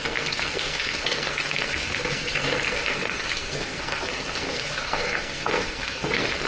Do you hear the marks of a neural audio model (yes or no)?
yes